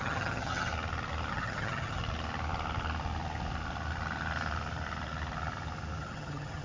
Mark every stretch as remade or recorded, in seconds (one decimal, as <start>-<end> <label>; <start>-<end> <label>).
0.0-0.7 remade; 0.7-1.3 recorded; 1.3-2.0 remade; 2.0-6.0 recorded; 6.0-6.6 remade